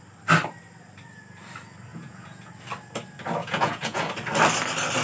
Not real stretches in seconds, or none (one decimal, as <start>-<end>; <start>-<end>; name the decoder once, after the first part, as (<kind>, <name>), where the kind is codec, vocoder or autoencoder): 1.9-2.5 (vocoder, Vocos); 3.4-4.1